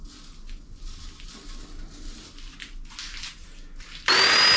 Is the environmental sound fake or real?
real